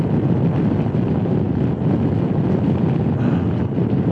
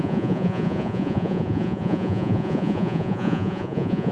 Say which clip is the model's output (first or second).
second